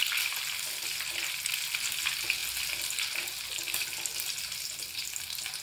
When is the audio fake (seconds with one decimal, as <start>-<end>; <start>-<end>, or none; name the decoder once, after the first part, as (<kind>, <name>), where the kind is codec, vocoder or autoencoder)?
none